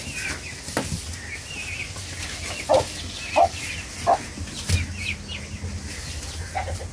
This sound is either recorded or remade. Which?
recorded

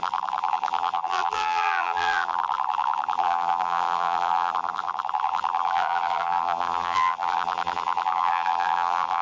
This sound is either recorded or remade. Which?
remade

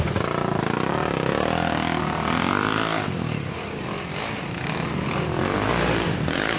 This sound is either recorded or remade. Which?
recorded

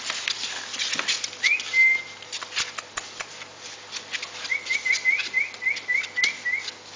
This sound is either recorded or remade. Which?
recorded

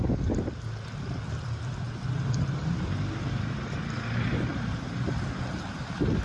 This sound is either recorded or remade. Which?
remade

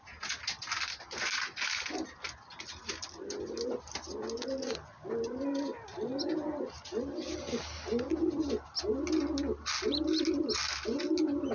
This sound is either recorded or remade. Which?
recorded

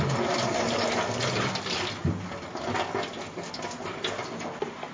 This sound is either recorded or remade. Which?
recorded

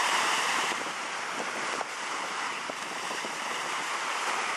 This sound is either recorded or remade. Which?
remade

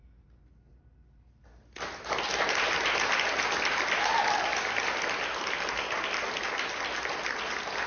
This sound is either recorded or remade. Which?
recorded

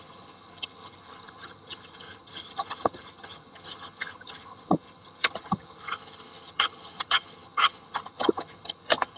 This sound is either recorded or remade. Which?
remade